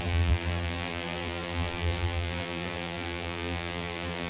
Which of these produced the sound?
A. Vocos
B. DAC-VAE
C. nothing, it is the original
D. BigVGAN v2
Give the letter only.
D